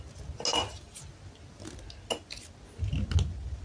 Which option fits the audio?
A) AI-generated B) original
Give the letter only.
B